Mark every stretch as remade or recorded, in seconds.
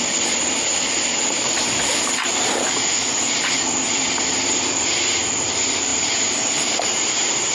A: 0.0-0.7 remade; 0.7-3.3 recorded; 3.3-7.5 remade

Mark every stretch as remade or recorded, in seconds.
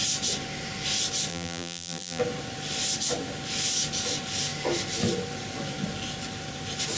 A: 0.0-1.3 recorded; 1.3-2.2 remade; 2.2-7.0 recorded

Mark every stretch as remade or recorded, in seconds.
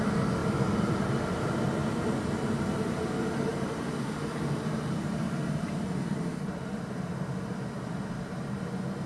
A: 0.0-0.4 recorded; 0.4-1.4 remade; 1.4-3.5 recorded; 3.5-7.5 remade; 7.5-9.1 recorded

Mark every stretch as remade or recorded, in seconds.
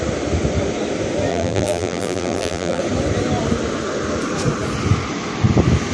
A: 0.0-1.3 recorded; 1.3-2.8 remade; 2.8-5.9 recorded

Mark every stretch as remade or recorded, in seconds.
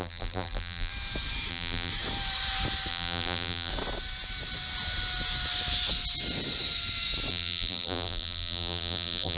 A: 0.0-0.9 remade; 0.9-1.5 recorded; 1.5-1.9 remade; 1.9-2.9 recorded; 2.9-3.7 remade; 3.7-7.3 recorded; 7.3-9.4 remade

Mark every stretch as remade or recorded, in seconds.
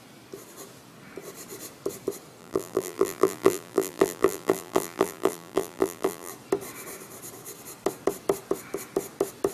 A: 0.0-2.4 recorded; 2.4-6.3 remade; 6.3-9.5 recorded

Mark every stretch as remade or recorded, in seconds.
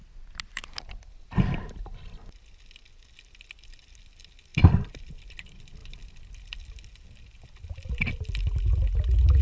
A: 0.0-4.5 recorded; 4.5-5.2 remade; 5.2-9.4 recorded